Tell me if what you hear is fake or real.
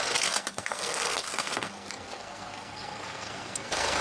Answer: fake